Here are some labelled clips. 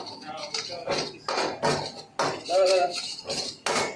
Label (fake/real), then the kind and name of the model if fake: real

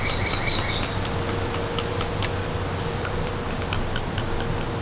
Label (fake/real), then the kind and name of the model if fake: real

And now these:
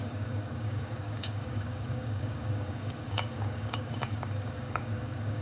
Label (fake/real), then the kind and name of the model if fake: fake, codec, DAC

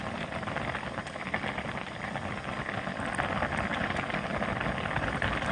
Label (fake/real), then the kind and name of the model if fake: real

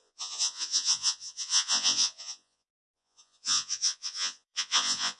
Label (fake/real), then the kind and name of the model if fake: fake, vocoder, Vocos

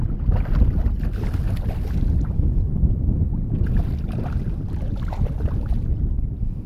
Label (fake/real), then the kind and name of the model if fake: real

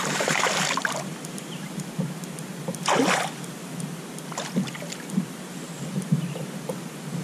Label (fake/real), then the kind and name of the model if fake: fake, vocoder, BigVGAN v2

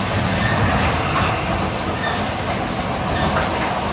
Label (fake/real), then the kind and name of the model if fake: real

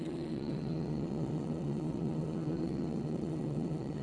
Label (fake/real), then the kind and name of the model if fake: fake, vocoder, WaveNeXt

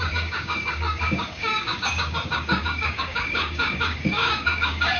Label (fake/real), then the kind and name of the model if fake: fake, codec, DAC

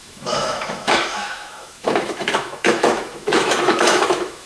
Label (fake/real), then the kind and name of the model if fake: fake, autoencoder, DAC-VAE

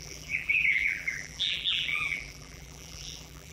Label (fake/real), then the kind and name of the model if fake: fake, vocoder, BigVGAN v2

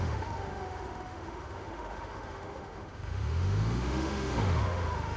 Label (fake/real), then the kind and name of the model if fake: fake, autoencoder, DAC-VAE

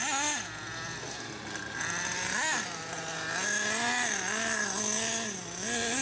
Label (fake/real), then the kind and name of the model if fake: real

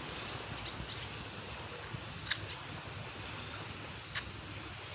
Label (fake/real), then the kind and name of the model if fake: fake, vocoder, BigVGAN v2